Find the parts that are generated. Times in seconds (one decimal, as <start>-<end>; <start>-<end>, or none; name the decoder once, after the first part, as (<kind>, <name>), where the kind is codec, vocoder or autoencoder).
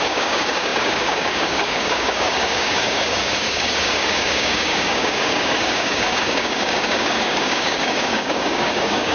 0.0-9.1 (codec, DAC)